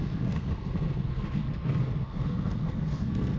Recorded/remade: remade